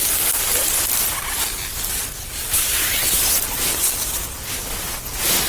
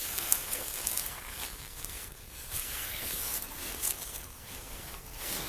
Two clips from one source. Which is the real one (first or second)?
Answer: first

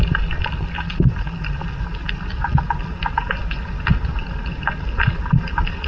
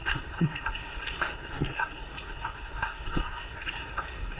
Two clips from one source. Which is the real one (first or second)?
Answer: first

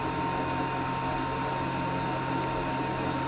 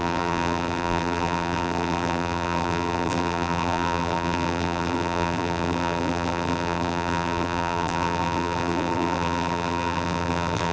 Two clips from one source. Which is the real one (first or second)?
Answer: first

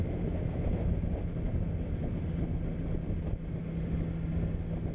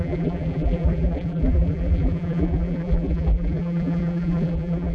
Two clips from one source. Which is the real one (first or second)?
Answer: first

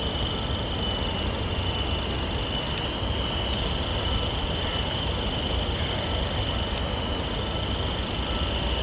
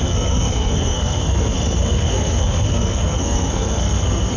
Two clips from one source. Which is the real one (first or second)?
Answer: first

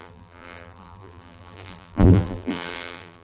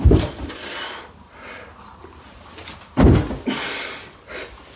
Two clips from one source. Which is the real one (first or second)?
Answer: second